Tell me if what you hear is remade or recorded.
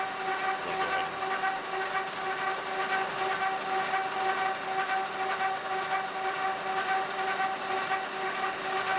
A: recorded